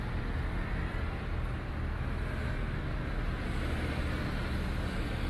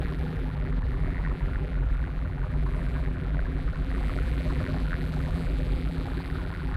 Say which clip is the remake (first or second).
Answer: second